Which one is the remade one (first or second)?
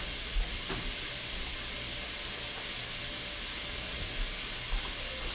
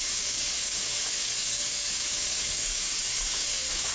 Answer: second